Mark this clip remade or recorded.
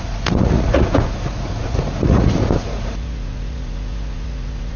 remade